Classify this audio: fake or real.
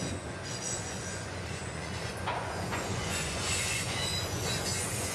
fake